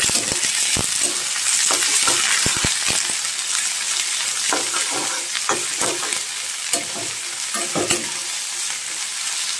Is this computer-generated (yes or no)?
no